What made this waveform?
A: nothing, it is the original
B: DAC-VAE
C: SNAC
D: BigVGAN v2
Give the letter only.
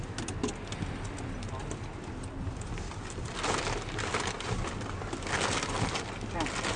A